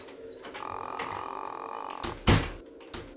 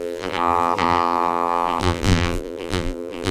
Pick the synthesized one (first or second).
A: second